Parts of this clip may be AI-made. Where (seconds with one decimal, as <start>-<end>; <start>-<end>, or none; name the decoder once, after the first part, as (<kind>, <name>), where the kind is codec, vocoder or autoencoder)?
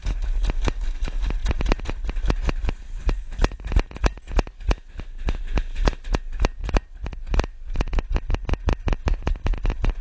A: 1.4-3.1 (vocoder, BigVGAN v2); 6.6-7.4